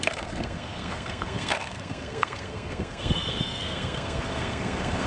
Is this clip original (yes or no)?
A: no